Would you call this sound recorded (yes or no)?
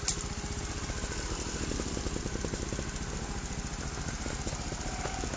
yes